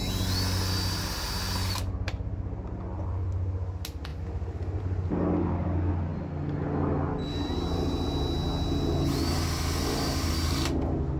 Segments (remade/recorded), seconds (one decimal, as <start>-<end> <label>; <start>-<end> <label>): 0.0-11.2 recorded